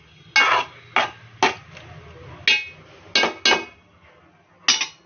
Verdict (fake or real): real